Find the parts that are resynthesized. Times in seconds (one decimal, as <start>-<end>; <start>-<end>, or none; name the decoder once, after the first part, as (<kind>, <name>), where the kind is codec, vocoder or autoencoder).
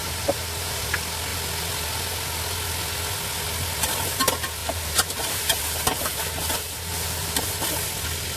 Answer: 0.0-0.8 (vocoder, BigVGAN v2); 4.6-7.5